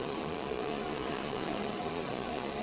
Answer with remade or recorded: remade